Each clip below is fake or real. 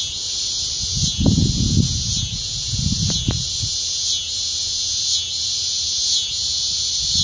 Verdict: real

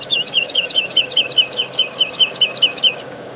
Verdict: fake